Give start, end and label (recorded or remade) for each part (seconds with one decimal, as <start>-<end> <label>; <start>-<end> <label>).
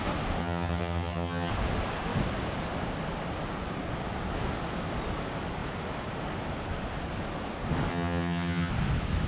0.0-0.4 recorded; 0.4-1.5 remade; 1.5-7.9 recorded; 7.9-8.7 remade; 8.7-9.3 recorded